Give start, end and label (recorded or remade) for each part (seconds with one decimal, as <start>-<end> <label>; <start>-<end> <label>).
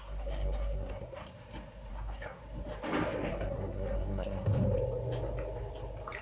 0.0-1.2 remade; 1.2-1.9 recorded; 1.9-2.4 remade; 2.4-3.3 recorded; 3.3-4.5 remade; 4.5-6.2 recorded